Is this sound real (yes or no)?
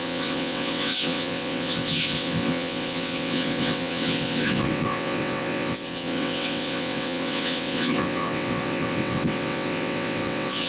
no